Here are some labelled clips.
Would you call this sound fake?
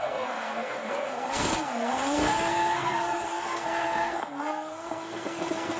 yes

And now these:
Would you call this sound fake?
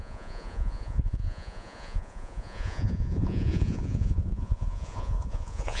yes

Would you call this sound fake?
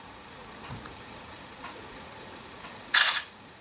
yes